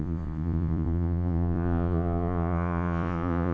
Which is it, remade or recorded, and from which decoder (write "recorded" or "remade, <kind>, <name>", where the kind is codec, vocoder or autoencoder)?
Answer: remade, vocoder, Vocos